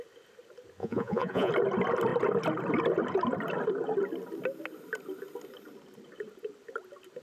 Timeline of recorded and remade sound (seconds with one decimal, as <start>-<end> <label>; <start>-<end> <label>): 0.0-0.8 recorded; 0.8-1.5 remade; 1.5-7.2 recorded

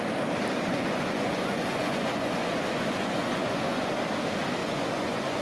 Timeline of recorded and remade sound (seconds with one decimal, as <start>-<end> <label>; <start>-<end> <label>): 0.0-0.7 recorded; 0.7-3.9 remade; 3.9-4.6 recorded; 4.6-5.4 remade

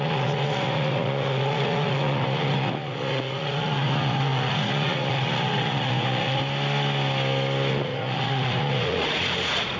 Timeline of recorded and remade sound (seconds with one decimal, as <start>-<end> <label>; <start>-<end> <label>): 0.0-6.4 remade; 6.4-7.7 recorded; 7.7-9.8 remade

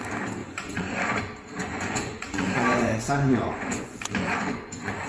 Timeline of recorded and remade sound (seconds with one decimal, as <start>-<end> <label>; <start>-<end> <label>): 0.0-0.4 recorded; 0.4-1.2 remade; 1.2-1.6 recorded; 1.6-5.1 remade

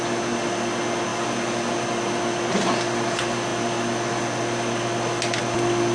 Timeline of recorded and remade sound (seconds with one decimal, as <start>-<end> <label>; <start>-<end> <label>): 0.0-5.9 recorded

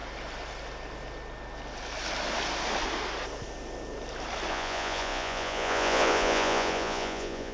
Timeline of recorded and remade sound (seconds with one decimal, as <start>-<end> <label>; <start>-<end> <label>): 0.0-4.5 recorded; 4.5-7.5 remade

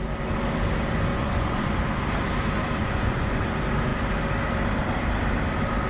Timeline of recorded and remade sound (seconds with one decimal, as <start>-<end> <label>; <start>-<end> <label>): 0.0-1.1 recorded; 1.1-1.7 remade; 1.7-2.8 recorded; 2.8-3.4 remade; 3.4-5.9 recorded